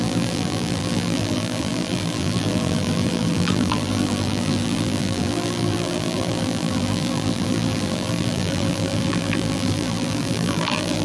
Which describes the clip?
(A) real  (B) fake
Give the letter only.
B